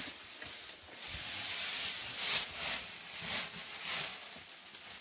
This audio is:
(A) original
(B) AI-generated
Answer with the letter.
A